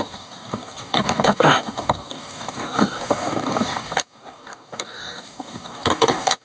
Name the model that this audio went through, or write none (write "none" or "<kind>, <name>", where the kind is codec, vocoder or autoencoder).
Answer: codec, DAC